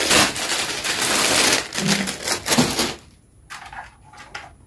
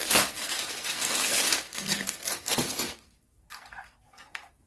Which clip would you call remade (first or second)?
second